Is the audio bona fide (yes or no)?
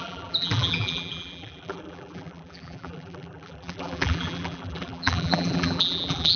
no